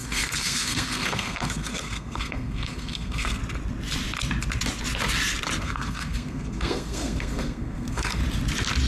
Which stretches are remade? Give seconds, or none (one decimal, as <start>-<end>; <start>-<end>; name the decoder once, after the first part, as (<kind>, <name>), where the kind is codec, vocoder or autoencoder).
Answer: 0.0-3.4 (codec, SNAC); 5.6-8.2